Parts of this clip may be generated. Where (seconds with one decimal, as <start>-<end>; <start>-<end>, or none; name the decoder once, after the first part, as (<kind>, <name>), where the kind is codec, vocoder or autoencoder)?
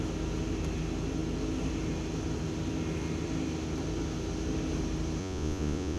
5.2-6.0 (vocoder, Vocos)